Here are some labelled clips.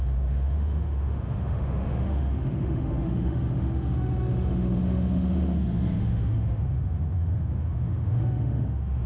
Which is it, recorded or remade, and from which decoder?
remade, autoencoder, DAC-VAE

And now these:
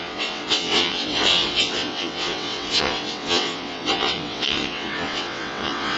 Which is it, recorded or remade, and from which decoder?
remade, vocoder, WaveNeXt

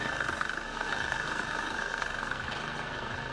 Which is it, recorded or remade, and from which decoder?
remade, codec, SNAC